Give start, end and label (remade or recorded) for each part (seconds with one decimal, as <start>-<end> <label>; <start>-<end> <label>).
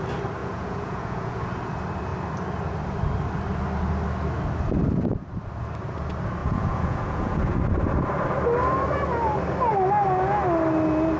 0.0-0.4 recorded; 0.4-1.4 remade; 1.4-6.4 recorded; 6.4-7.6 remade; 7.6-11.2 recorded